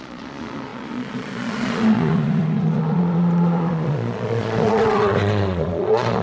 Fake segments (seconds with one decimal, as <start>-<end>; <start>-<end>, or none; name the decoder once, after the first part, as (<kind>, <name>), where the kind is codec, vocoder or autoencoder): 0.0-6.2 (vocoder, Vocos)